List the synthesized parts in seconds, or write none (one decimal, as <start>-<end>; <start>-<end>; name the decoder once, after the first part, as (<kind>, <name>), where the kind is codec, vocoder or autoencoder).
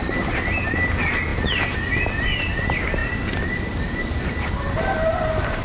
none